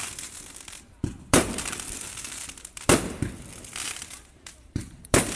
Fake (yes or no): yes